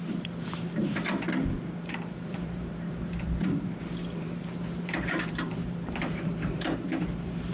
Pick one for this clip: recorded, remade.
remade